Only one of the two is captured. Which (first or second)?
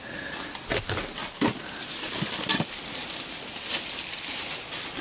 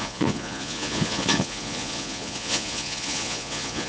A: first